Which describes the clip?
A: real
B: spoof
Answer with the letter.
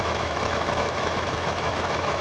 B